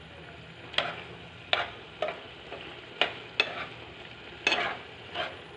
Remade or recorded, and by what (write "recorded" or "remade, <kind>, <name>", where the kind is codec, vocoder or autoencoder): recorded